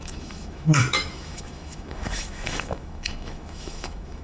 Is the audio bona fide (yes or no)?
no